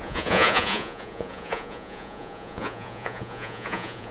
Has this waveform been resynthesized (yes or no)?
yes